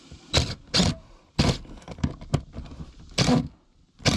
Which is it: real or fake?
real